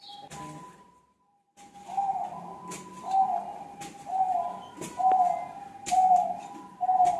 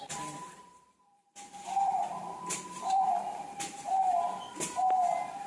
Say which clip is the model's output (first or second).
second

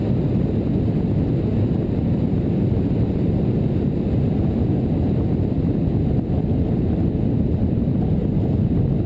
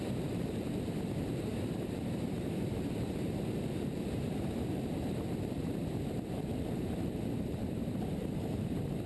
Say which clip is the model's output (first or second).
second